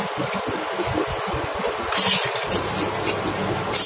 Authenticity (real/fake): real